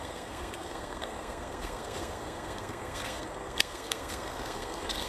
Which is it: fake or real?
fake